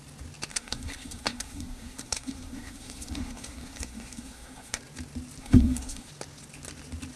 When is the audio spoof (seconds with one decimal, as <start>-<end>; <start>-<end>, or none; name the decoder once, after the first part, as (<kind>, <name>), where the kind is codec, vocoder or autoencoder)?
0.5-4.8 (codec, SNAC); 5.4-6.1